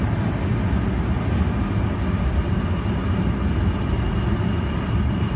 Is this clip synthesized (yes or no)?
no